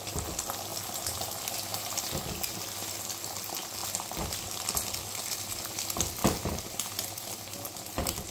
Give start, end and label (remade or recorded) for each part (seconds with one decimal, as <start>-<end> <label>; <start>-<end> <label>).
0.0-1.7 recorded; 1.7-2.2 remade; 2.2-8.3 recorded